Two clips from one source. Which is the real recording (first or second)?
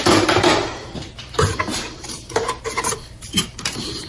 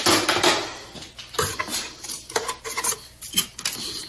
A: second